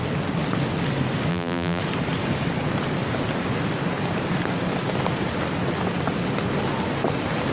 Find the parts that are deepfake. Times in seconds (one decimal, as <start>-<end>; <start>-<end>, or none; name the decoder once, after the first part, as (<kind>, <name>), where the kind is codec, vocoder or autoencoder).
1.3-1.8 (vocoder, BigVGAN v2)